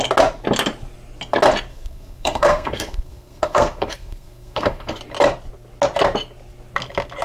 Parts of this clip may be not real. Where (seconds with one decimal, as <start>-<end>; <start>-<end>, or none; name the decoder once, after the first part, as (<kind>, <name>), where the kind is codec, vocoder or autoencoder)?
1.7-5.0 (codec, SNAC)